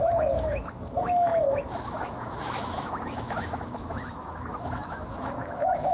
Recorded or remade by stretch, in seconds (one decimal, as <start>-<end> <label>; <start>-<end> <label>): 0.0-5.9 remade